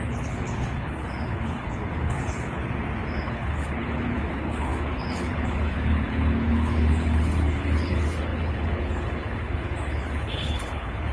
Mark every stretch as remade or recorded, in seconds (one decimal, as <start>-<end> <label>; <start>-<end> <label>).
0.0-2.6 remade; 2.6-3.1 recorded; 3.1-11.1 remade